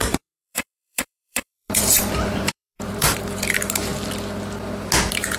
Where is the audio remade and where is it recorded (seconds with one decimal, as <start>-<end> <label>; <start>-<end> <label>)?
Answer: 0.0-3.9 remade; 3.9-5.0 recorded; 5.0-5.4 remade